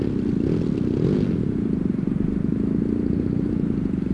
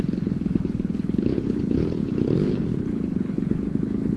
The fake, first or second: second